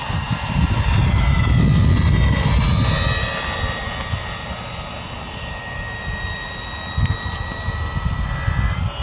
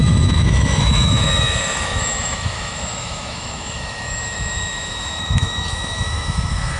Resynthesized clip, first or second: second